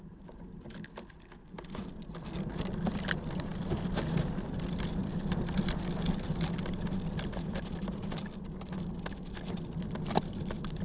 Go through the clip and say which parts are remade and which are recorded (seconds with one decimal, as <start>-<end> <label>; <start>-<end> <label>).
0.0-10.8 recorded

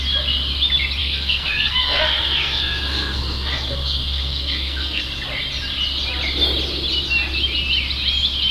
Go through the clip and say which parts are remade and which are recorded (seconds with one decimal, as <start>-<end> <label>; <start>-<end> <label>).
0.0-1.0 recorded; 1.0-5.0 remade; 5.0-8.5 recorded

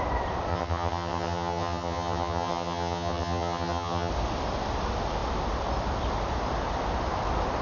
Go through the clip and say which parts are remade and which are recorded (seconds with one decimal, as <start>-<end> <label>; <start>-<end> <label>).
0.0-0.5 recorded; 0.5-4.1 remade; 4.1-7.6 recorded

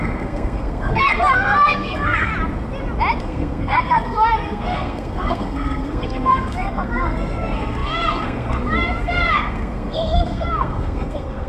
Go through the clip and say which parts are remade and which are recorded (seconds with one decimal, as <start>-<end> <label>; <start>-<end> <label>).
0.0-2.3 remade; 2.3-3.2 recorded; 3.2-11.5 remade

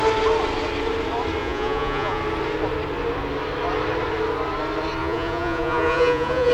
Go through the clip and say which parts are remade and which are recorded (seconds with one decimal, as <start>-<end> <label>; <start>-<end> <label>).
0.0-1.4 recorded; 1.4-2.2 remade; 2.2-5.0 recorded; 5.0-6.5 remade